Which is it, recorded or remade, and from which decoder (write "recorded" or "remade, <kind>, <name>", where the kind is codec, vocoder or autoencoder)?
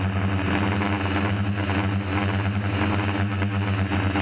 recorded